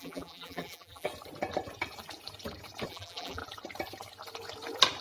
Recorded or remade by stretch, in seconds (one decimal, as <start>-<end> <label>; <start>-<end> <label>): 0.0-1.1 remade; 1.1-2.9 recorded; 2.9-3.4 remade; 3.4-5.0 recorded